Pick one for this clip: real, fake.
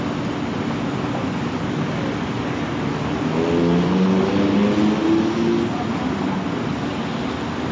real